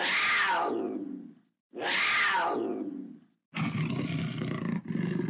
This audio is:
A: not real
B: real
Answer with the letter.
B